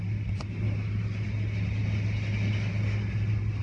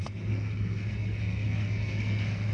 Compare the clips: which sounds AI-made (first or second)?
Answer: second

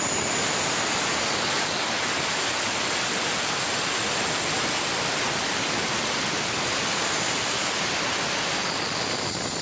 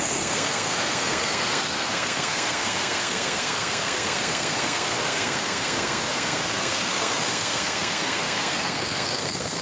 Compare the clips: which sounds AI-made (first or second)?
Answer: second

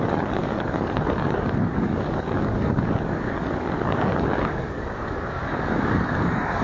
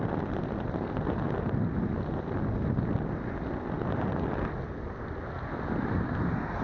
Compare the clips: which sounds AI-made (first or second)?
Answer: first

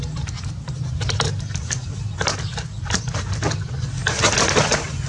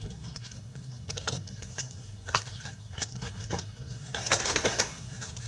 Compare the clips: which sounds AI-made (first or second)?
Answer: second